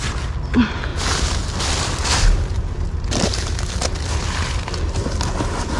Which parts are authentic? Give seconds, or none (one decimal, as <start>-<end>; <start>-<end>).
0.0-0.9; 1.8-2.5; 3.3-5.8